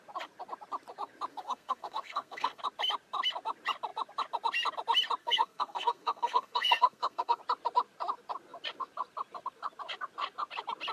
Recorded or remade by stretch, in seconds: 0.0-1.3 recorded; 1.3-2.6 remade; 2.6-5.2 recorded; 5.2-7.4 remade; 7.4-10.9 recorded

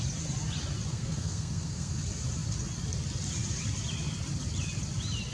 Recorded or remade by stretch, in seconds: 0.0-0.9 recorded; 0.9-2.0 remade; 2.0-5.3 recorded

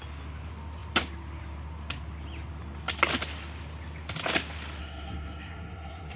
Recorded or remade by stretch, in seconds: 0.0-4.8 recorded; 4.8-6.2 remade

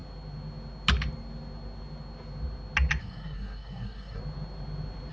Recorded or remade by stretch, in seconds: 0.0-3.0 recorded; 3.0-4.2 remade; 4.2-5.1 recorded